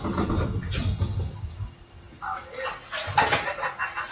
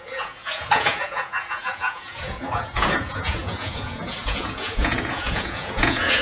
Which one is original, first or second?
first